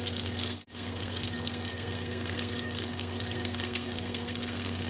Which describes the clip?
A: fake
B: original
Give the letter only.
A